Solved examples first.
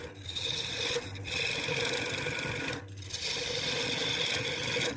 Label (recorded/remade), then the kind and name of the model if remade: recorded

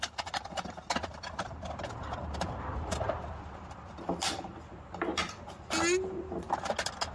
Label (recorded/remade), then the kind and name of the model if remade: recorded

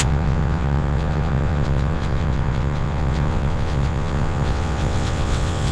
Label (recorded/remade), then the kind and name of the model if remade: remade, vocoder, WaveNeXt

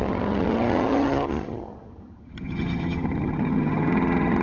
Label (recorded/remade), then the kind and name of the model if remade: remade, vocoder, HiFi-GAN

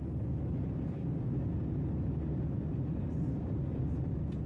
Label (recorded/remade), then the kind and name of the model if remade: recorded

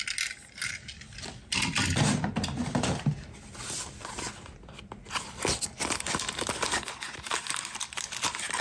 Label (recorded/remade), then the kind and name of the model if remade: recorded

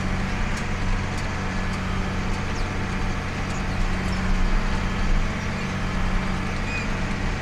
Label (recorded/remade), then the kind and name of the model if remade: recorded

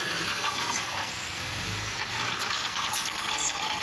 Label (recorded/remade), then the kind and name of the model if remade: remade, codec, SNAC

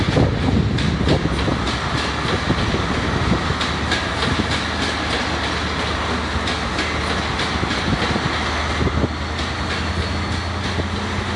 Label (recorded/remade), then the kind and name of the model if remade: recorded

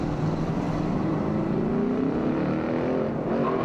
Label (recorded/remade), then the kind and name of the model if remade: recorded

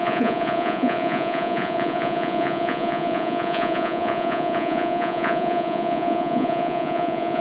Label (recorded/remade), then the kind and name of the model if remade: remade, vocoder, Vocos